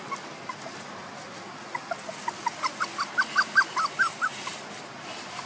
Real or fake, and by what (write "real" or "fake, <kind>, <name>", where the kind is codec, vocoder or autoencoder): real